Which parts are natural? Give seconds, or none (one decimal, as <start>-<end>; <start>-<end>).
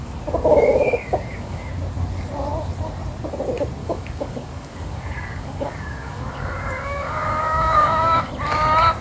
0.0-0.5; 1.7-3.8; 8.3-9.0